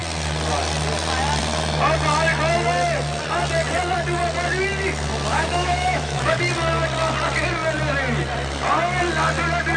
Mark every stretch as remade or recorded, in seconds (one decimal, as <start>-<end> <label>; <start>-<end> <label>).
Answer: 0.0-5.3 recorded; 5.3-6.4 remade; 6.4-9.8 recorded